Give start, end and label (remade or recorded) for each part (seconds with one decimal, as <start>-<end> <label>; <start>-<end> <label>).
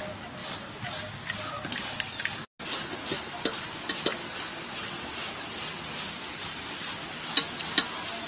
0.0-8.3 recorded